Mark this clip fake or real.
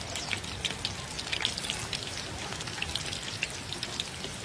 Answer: real